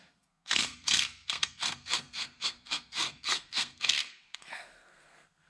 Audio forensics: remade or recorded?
remade